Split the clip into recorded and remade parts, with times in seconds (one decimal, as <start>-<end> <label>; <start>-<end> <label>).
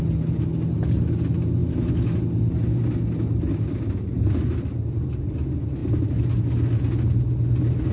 0.0-7.9 recorded